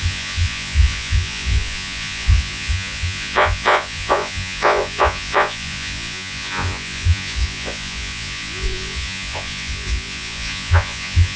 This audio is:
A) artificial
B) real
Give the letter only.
A